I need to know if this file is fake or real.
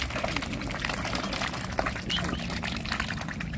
real